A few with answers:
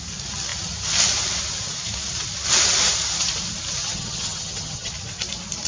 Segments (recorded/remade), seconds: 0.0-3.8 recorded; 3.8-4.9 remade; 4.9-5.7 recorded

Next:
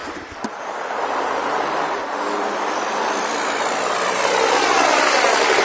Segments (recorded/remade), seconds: 0.0-2.0 remade; 2.0-5.6 recorded

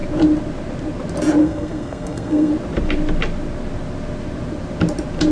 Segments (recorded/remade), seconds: 0.0-1.4 recorded; 1.4-2.5 remade; 2.5-5.3 recorded